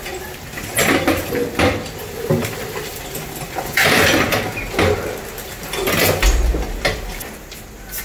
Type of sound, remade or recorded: recorded